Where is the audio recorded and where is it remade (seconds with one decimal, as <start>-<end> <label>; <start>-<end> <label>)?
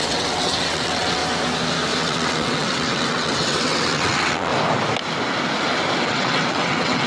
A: 0.0-1.2 remade; 1.2-2.0 recorded; 2.0-4.5 remade; 4.5-6.0 recorded; 6.0-7.1 remade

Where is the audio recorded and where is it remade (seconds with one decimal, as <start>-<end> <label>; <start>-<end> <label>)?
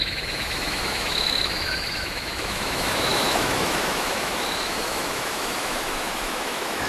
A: 0.0-6.9 remade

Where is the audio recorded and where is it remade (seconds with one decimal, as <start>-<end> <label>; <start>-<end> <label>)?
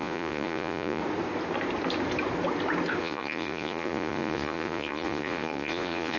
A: 0.0-1.0 remade; 1.0-3.0 recorded; 3.0-6.2 remade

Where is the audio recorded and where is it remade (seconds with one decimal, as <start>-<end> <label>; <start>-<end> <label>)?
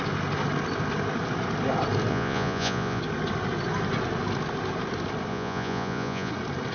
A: 0.0-2.1 recorded; 2.1-3.0 remade; 3.0-5.3 recorded; 5.3-6.3 remade; 6.3-6.7 recorded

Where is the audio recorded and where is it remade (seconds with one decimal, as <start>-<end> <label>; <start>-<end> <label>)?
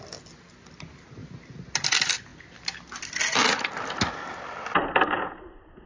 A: 0.0-5.9 recorded